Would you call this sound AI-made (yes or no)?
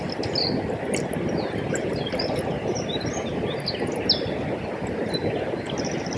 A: no